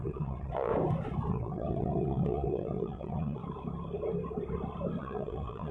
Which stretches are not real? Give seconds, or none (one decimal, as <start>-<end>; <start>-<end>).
0.0-0.7; 1.3-3.4; 5.0-5.7